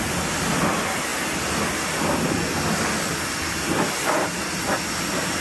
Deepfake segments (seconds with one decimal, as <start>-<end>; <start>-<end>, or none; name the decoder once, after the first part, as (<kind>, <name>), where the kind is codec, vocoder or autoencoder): none